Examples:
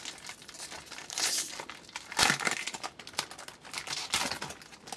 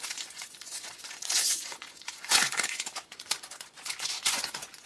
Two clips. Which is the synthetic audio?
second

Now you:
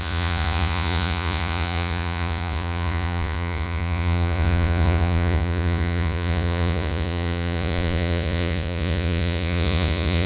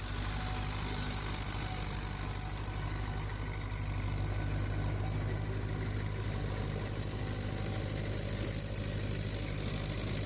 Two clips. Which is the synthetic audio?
first